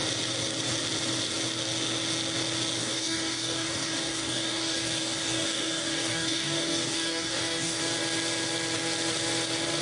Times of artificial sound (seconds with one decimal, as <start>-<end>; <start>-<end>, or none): 2.8-7.8